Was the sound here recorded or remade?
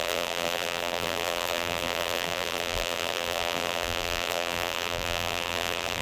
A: remade